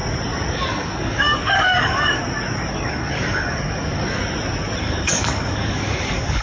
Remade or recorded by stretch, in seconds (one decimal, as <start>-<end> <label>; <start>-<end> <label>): 0.0-0.5 recorded; 0.5-2.2 remade; 2.2-2.7 recorded; 2.7-4.2 remade; 4.2-4.8 recorded; 4.8-6.4 remade